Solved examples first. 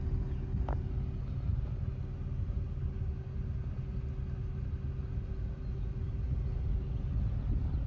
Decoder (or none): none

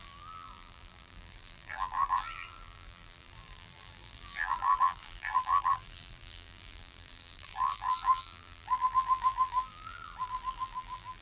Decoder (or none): vocoder, BigVGAN v2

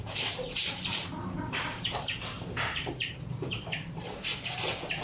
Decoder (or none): vocoder, BigVGAN v2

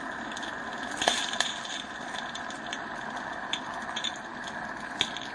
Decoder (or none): none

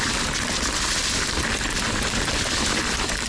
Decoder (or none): vocoder, BigVGAN v2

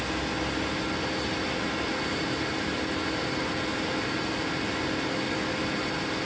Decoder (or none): none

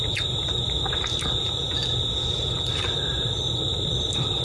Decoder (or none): vocoder, BigVGAN v2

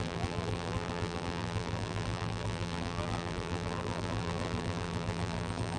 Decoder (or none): vocoder, BigVGAN v2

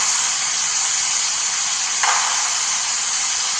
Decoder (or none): none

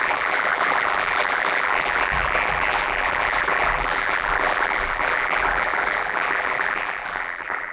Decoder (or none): vocoder, BigVGAN v2